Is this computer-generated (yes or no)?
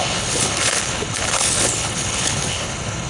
yes